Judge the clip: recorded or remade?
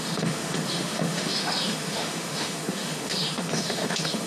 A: remade